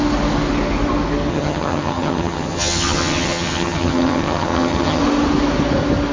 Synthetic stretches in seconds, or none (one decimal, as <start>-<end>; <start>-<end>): 1.3-5.0